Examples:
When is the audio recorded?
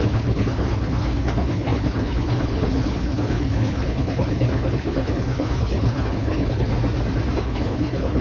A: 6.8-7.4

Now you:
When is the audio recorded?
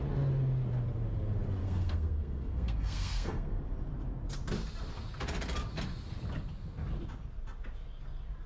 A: 0.0-1.6; 3.6-8.5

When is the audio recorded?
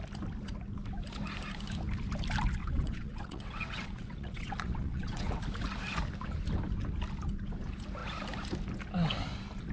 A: 0.0-2.6; 5.4-9.7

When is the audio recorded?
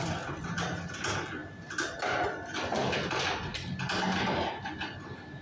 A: 0.0-5.4